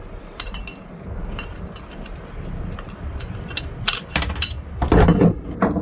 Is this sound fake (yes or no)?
no